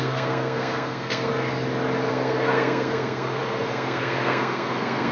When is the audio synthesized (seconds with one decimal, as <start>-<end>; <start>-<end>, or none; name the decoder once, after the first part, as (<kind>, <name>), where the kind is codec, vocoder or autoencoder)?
0.0-1.3 (codec, SNAC); 2.1-5.1